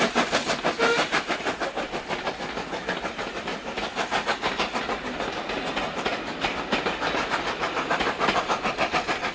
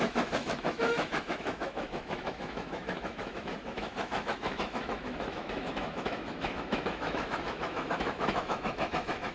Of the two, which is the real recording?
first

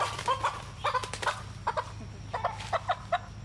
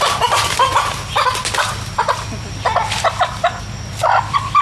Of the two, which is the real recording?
first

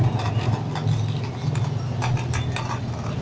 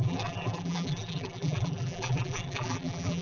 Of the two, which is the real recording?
first